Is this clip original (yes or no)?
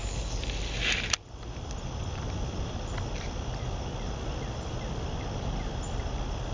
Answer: yes